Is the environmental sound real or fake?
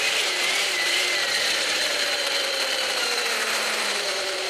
fake